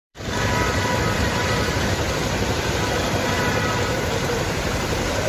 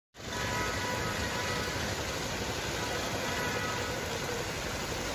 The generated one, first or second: first